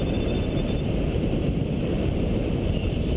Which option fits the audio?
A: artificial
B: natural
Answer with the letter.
A